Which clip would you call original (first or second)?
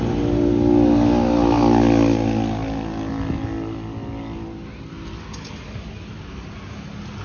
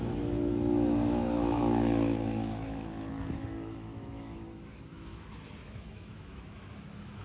first